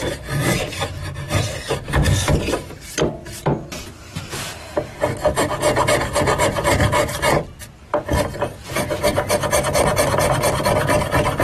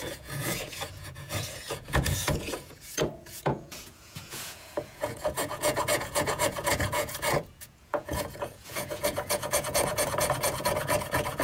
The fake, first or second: second